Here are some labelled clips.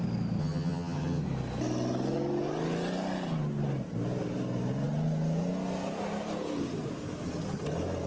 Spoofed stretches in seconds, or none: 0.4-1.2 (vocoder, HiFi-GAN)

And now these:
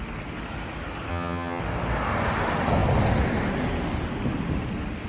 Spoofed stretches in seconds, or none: 1.1-1.6 (vocoder, HiFi-GAN)